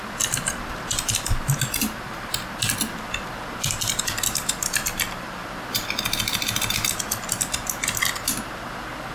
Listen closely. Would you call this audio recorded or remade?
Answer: recorded